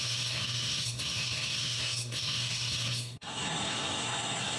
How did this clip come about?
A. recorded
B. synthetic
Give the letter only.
B